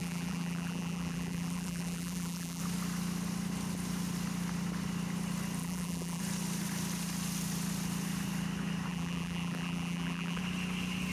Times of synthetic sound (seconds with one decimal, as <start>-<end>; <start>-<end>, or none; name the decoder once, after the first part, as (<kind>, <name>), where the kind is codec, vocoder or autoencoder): 0.0-2.6 (vocoder, BigVGAN v2); 5.6-6.2; 8.9-10.4